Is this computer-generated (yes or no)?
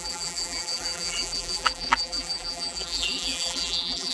yes